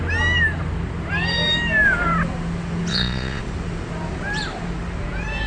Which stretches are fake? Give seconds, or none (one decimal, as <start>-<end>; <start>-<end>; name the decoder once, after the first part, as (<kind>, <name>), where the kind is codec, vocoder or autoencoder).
2.9-3.4 (vocoder, Vocos)